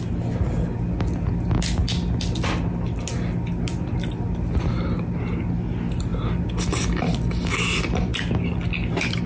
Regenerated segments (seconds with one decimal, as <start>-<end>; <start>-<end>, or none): none